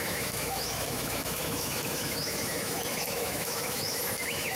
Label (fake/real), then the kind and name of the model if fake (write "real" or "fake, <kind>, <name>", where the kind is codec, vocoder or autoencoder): fake, autoencoder, DAC-VAE